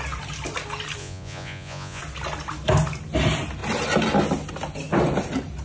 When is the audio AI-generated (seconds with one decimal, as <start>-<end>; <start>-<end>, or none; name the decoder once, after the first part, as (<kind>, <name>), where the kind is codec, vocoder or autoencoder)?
1.0-2.0 (vocoder, Vocos)